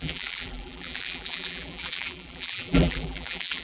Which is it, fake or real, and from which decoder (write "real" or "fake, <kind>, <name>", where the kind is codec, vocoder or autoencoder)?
fake, vocoder, BigVGAN v2